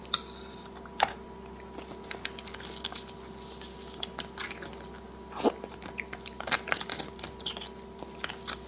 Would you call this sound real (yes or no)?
yes